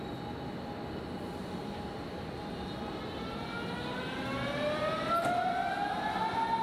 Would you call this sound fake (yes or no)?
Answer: no